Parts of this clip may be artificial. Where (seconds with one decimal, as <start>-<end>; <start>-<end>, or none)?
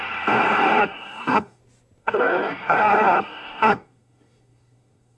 0.8-1.6; 2.0-5.2